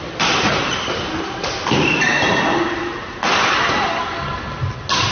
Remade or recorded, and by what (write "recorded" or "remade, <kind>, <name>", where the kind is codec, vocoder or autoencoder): recorded